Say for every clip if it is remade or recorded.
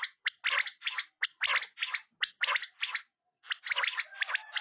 recorded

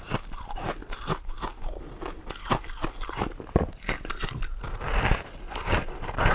recorded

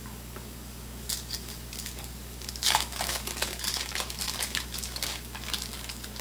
remade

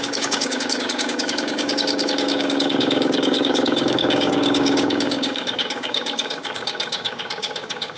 remade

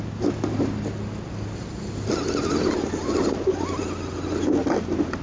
recorded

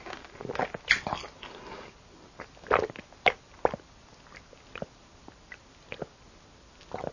recorded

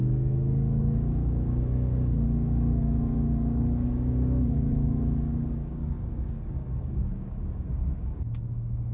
remade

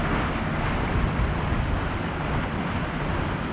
recorded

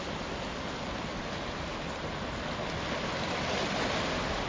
recorded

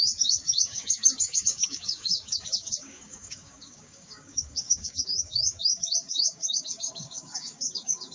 remade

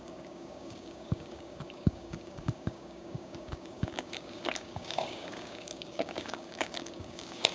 remade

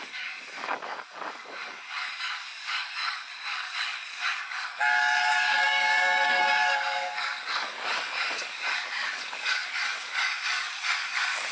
remade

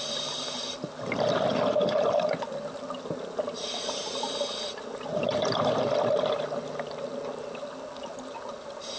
recorded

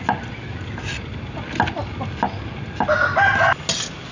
recorded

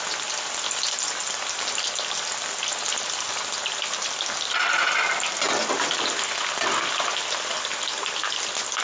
recorded